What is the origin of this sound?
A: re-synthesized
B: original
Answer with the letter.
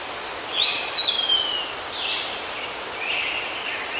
A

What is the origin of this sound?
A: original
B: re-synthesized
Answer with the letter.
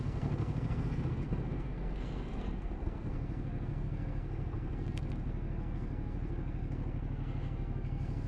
B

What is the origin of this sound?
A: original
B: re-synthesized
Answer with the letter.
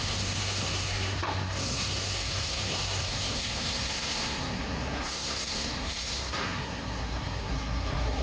B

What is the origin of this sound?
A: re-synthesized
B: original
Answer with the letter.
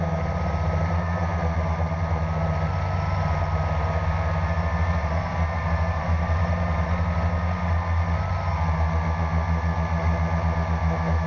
B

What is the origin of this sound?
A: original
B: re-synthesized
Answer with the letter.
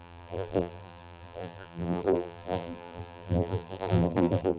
B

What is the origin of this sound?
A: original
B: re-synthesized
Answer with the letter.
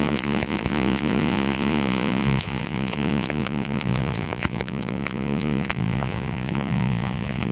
B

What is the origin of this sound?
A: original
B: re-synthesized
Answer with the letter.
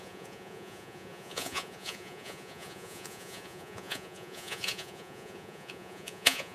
B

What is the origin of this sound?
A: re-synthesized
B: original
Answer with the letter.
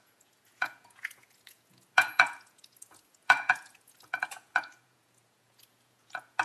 A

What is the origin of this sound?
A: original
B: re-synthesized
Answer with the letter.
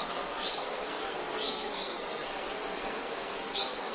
B